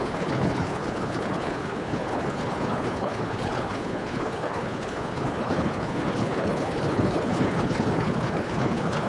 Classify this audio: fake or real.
fake